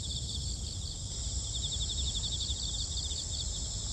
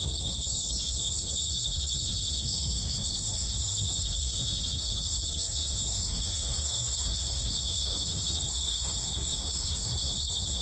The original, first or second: first